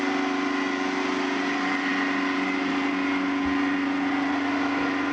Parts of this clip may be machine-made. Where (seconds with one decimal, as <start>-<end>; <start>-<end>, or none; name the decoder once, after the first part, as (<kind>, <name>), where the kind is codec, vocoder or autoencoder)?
none